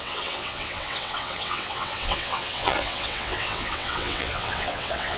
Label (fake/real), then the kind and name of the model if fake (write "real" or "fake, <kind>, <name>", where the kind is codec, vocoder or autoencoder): fake, vocoder, WaveNeXt